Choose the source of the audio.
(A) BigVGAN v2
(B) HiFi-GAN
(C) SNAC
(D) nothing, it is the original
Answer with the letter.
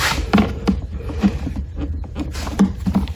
A